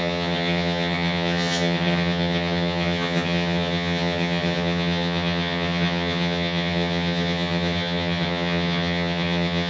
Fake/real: fake